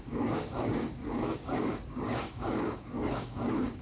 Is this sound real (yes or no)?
no